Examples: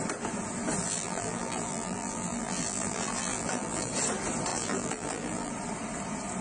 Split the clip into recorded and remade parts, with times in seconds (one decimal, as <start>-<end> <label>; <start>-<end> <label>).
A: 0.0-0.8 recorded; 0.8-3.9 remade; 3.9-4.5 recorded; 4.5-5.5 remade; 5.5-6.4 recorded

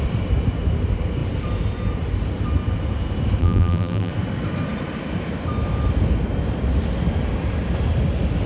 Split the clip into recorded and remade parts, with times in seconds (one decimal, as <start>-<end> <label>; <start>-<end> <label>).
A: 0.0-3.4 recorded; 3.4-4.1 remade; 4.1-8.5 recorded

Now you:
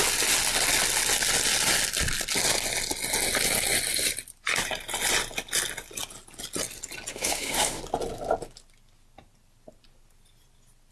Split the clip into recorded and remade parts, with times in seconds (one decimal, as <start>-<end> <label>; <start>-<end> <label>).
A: 0.0-7.1 recorded; 7.1-7.8 remade; 7.8-10.9 recorded